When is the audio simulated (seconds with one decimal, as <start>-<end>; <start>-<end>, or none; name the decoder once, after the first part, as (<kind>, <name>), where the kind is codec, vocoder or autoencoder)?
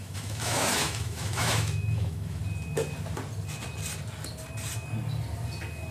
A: 0.0-2.4 (autoencoder, DAC-VAE)